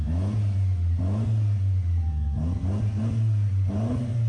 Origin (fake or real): real